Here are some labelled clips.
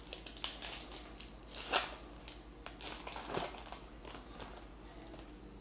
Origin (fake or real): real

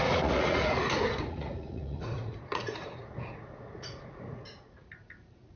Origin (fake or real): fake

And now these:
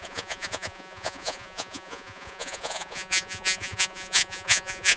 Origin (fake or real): fake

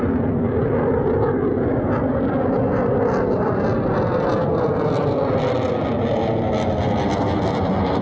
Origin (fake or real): real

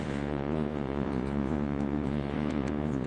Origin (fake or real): fake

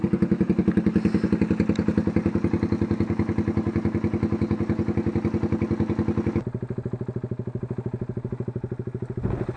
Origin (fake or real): real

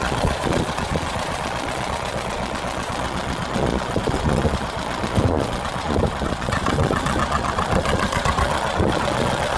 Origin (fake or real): fake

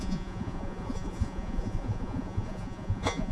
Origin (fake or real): fake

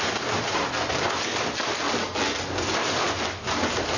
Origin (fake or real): real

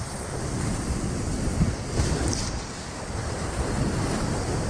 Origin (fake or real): real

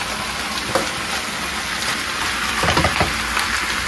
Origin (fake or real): real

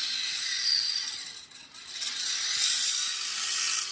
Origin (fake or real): real